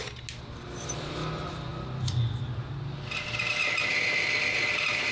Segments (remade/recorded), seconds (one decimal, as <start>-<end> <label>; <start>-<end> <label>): 0.0-5.1 recorded